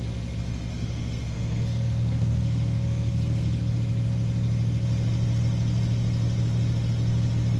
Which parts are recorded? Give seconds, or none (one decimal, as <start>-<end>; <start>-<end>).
0.0-0.7; 3.7-7.6